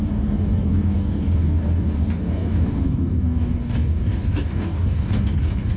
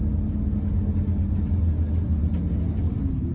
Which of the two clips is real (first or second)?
second